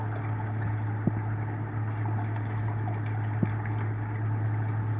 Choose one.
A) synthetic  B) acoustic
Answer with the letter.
B